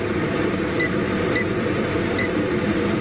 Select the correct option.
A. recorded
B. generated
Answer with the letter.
B